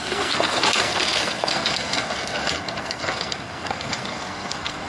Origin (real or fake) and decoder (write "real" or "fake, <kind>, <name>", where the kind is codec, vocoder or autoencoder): fake, codec, SNAC